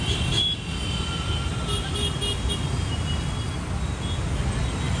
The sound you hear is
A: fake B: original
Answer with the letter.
B